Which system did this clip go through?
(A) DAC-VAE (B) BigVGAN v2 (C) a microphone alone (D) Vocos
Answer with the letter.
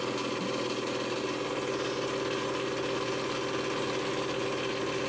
C